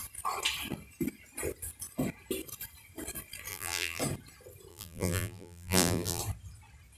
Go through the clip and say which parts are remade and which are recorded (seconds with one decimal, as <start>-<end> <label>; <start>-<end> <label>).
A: 0.0-3.5 recorded; 3.5-4.0 remade; 4.0-4.7 recorded; 4.7-6.2 remade; 6.2-7.0 recorded